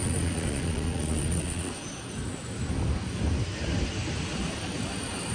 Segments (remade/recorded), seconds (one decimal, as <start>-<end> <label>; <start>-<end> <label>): 0.0-1.7 remade; 1.7-5.3 recorded